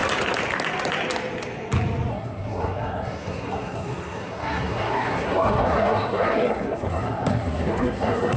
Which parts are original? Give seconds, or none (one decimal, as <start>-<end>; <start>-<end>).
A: 0.0-2.1